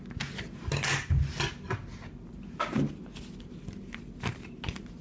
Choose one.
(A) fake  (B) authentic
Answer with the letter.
B